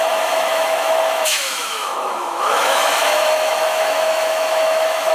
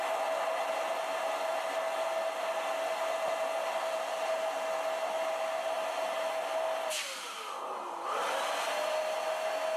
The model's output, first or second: first